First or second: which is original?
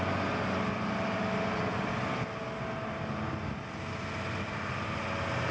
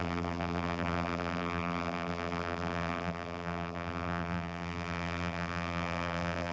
first